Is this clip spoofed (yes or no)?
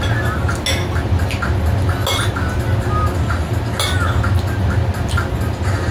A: no